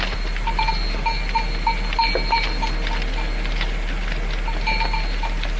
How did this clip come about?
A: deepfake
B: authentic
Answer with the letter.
B